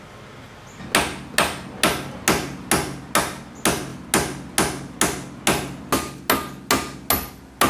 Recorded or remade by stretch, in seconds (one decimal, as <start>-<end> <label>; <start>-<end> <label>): 0.0-7.7 recorded